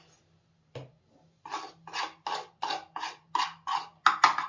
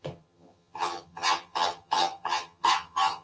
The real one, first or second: first